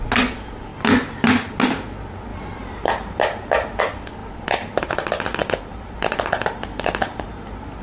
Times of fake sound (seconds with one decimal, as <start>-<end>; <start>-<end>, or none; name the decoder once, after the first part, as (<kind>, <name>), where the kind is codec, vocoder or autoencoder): 2.3-3.8 (vocoder, BigVGAN v2); 4.2-4.9; 5.4-7.3